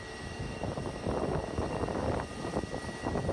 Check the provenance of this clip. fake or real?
real